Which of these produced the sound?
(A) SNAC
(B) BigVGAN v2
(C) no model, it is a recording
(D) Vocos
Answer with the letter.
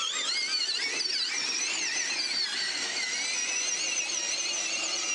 C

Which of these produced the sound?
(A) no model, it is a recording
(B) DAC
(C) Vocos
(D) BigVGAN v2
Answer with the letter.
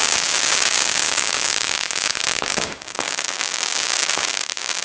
B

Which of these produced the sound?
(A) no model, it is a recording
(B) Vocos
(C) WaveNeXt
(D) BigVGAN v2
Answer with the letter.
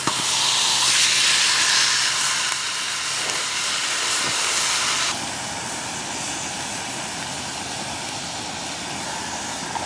A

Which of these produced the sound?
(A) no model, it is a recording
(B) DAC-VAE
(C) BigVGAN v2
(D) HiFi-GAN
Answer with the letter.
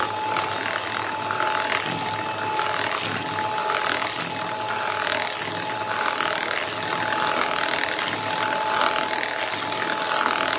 A